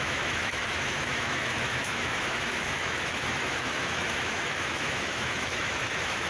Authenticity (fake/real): fake